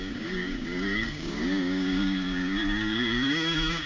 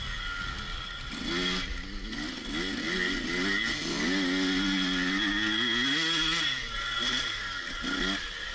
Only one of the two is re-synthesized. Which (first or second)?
first